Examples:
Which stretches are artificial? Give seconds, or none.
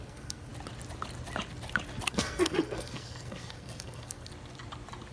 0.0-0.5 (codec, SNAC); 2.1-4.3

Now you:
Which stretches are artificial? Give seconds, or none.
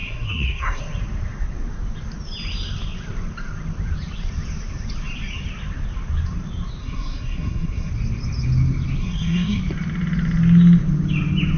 0.0-0.8 (codec, SNAC); 6.8-7.9; 9.0-9.6